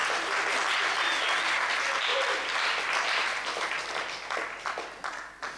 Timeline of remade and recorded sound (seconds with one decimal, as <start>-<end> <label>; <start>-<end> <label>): 0.0-2.1 recorded; 2.1-5.6 remade